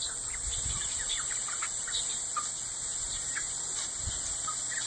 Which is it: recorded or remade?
recorded